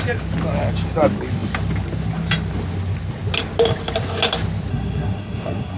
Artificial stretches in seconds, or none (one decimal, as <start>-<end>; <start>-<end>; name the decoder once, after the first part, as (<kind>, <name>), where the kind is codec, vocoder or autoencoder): 4.7-5.8 (codec, SNAC)